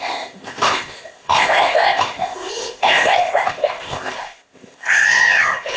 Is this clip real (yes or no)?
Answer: no